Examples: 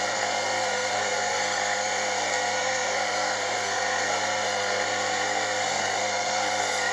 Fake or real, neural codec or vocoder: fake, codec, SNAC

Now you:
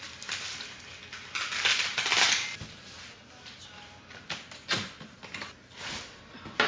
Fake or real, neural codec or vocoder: real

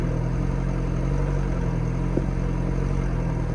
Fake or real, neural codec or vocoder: real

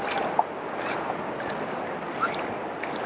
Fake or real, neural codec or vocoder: real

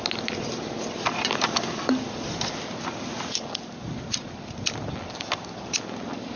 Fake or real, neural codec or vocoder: real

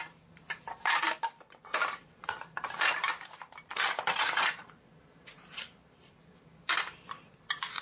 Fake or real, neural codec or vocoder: fake, vocoder, BigVGAN v2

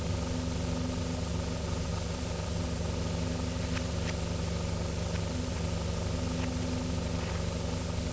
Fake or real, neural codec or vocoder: fake, vocoder, BigVGAN v2